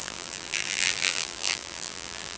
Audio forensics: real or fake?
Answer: fake